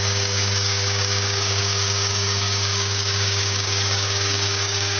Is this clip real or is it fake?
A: fake